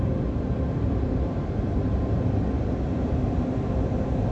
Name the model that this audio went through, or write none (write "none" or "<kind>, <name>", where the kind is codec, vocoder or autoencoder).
none